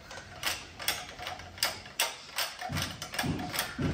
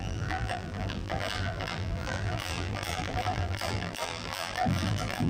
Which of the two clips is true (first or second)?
first